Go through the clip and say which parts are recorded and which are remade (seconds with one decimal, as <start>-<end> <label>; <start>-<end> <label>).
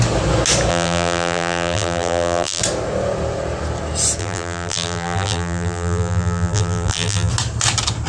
0.0-0.7 recorded; 0.7-2.6 remade; 2.6-4.2 recorded; 4.2-7.3 remade; 7.3-8.1 recorded